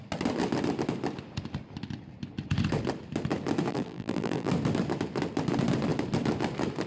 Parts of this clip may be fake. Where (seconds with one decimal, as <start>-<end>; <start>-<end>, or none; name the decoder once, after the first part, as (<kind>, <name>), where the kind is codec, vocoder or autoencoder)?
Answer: 3.7-4.5 (vocoder, BigVGAN v2)